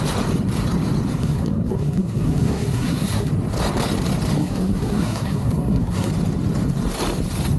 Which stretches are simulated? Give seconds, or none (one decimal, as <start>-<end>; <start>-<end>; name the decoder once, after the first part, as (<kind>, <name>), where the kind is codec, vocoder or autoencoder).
1.2-3.3 (codec, SNAC); 4.4-6.1